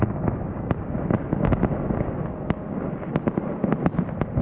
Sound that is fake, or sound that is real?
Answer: real